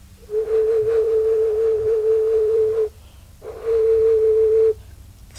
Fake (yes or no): yes